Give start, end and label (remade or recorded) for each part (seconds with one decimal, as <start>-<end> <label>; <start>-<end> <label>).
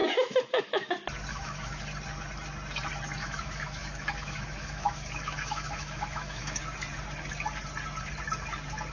0.0-0.9 remade; 0.9-1.3 recorded; 1.3-1.8 remade; 1.8-3.2 recorded; 3.2-6.6 remade; 6.6-8.9 recorded